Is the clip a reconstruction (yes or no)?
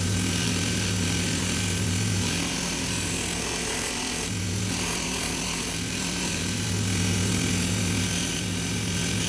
no